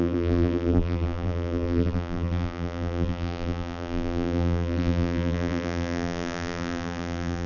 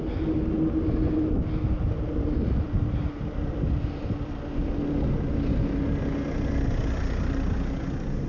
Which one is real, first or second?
second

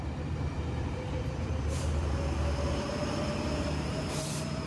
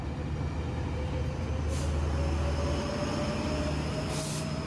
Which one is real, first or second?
second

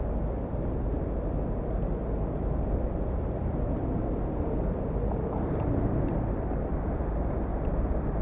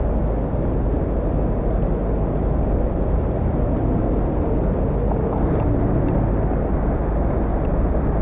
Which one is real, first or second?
second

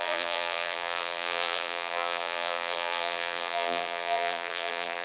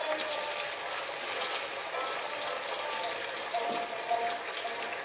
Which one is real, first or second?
second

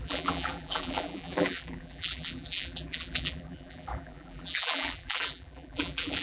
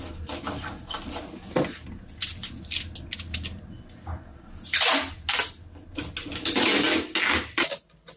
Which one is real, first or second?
second